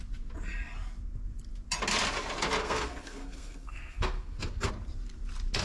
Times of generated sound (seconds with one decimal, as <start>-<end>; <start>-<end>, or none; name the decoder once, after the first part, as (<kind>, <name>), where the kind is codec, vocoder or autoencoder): 2.6-4.7 (codec, SNAC)